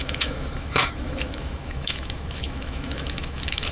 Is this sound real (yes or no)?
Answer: no